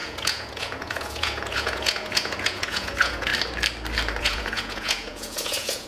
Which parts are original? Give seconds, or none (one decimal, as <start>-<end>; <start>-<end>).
3.3-4.2